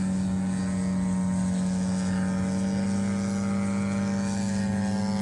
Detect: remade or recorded recorded